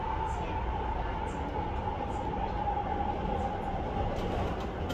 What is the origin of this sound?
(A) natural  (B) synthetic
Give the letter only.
A